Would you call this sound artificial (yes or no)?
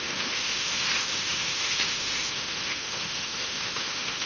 yes